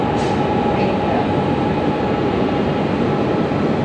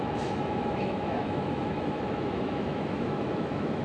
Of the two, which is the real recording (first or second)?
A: first